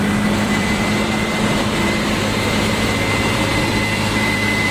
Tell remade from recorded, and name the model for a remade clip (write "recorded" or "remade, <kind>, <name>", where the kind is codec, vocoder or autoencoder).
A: remade, vocoder, BigVGAN v2